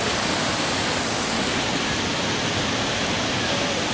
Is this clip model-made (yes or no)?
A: no